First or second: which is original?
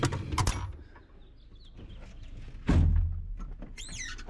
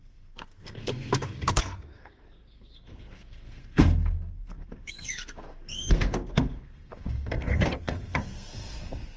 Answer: first